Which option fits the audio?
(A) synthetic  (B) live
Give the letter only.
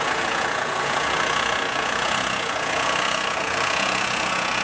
A